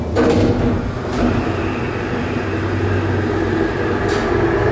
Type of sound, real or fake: real